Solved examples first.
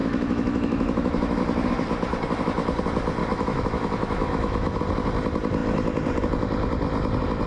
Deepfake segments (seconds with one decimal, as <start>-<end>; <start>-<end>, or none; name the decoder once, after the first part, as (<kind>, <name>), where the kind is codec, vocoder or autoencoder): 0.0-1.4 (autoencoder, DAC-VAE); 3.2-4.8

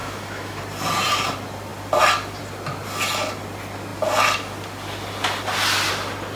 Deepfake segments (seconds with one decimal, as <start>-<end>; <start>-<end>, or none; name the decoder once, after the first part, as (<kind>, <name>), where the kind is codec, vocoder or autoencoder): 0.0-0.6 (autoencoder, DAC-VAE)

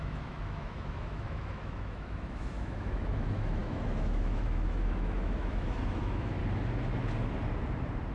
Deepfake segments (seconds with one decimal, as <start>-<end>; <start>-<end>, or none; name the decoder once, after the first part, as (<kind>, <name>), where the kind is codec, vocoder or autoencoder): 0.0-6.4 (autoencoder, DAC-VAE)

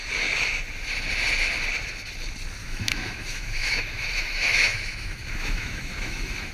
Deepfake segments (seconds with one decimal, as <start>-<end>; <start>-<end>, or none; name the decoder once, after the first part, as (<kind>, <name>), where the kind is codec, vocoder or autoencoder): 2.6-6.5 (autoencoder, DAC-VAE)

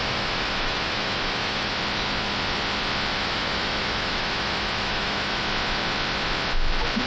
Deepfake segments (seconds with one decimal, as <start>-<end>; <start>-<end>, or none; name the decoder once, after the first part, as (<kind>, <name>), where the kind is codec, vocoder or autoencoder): 0.0-1.7 (autoencoder, DAC-VAE); 3.1-5.4

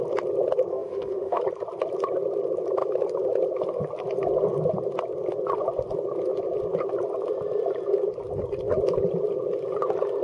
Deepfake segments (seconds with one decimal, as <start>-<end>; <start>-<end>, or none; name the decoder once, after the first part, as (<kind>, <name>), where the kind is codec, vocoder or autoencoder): 0.7-1.4 (autoencoder, DAC-VAE)

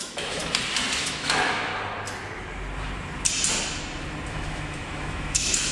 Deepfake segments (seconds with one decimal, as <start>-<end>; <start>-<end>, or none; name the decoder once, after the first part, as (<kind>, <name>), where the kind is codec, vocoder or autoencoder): 0.0-0.4 (autoencoder, DAC-VAE); 1.0-1.7; 4.3-5.7